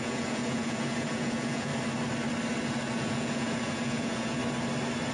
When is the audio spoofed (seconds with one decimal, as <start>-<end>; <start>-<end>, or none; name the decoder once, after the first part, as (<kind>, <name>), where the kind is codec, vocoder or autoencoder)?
0.0-1.7 (vocoder, Vocos); 3.0-4.4